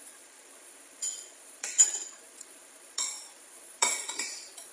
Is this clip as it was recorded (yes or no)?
no